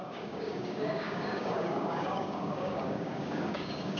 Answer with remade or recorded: remade